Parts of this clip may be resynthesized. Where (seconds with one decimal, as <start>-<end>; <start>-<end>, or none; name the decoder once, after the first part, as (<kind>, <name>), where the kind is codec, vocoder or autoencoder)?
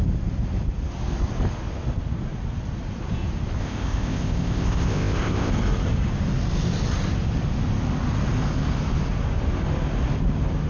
3.6-5.5 (codec, ZipCodec)